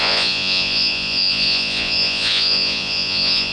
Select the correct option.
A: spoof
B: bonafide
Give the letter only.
A